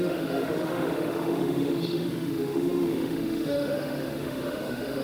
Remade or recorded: remade